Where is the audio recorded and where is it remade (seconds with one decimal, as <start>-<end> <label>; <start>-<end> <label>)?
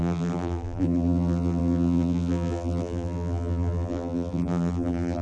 0.0-5.2 remade